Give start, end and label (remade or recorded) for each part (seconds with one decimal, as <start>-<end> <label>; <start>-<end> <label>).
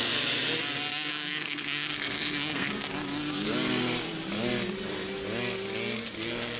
0.0-1.1 recorded; 1.1-2.7 remade; 2.7-6.6 recorded